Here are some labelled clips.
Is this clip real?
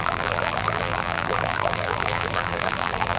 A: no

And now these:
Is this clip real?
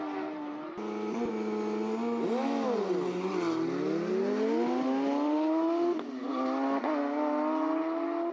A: yes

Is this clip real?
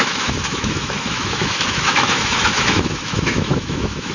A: no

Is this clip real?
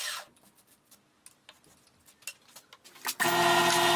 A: yes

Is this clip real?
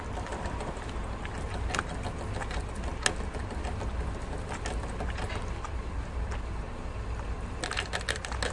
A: yes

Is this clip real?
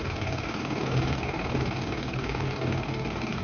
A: no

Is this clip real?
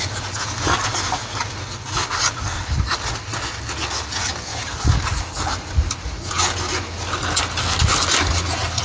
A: yes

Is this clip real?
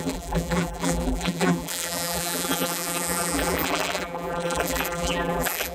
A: no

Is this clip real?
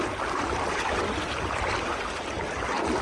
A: yes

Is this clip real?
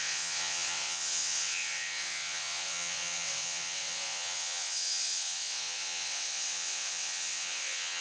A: no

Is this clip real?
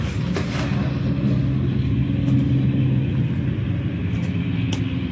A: yes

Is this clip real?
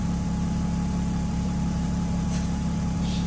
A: no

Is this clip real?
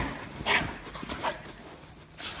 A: yes